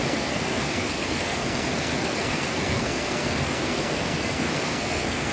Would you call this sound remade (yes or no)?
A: yes